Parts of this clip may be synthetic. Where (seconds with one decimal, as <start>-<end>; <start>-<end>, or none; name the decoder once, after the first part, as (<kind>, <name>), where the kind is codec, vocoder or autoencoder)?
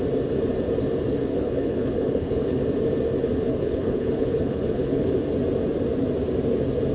1.3-2.6 (codec, HILCodec); 3.5-5.1